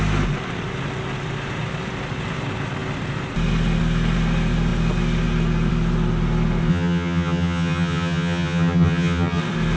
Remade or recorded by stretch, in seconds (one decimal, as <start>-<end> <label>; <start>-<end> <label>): 0.0-6.7 recorded; 6.7-9.4 remade; 9.4-9.8 recorded

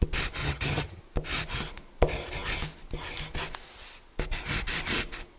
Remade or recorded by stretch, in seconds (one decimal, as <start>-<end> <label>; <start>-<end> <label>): 0.0-0.4 recorded; 0.4-1.0 remade; 1.0-5.4 recorded

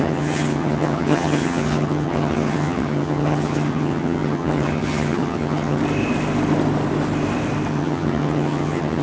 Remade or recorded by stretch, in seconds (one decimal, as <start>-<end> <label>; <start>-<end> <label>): 0.0-5.8 remade; 5.8-7.7 recorded; 7.7-9.0 remade

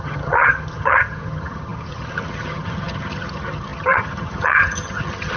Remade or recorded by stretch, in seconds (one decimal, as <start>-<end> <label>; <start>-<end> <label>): 0.0-5.4 remade

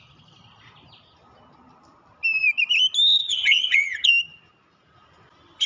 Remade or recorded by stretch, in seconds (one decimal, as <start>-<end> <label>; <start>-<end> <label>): 0.0-3.2 recorded; 3.2-4.1 remade; 4.1-5.7 recorded

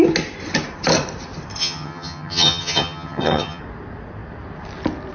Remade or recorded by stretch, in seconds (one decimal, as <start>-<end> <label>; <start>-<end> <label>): 0.0-1.6 recorded; 1.6-3.6 remade; 3.6-5.1 recorded

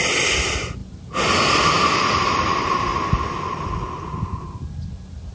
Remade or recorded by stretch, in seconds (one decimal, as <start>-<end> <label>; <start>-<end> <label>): 0.0-5.3 recorded